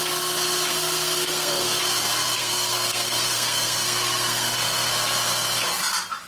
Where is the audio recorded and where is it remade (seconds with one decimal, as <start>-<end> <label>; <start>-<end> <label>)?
0.0-0.7 recorded; 0.7-1.8 remade; 1.8-2.4 recorded; 2.4-4.9 remade; 4.9-6.3 recorded